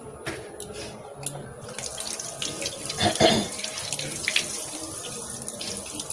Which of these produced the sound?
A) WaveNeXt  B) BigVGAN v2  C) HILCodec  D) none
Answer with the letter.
D